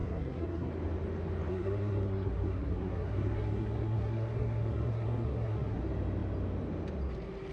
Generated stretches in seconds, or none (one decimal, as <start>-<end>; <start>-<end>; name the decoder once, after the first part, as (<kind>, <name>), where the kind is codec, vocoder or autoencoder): 0.0-0.7 (codec, SNAC); 1.5-5.8